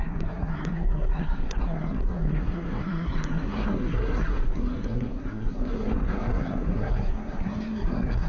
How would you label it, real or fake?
fake